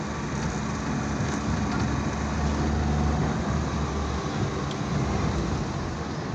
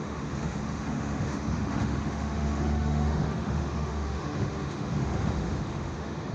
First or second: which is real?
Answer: first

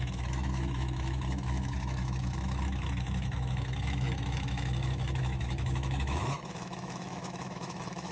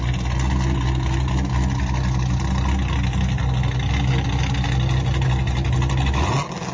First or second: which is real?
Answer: second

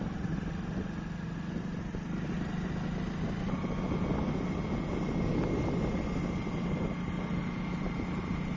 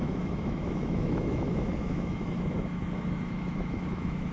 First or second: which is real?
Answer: first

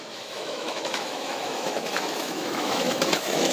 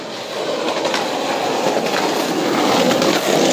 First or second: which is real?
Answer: second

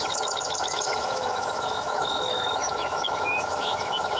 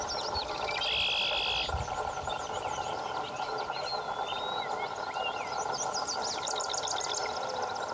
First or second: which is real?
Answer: second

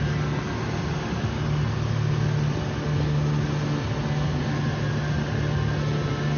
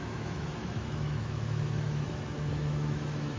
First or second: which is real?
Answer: first